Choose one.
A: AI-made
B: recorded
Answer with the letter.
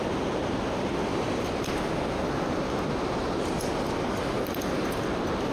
B